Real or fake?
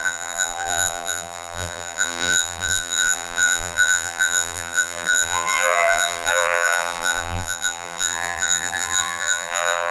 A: fake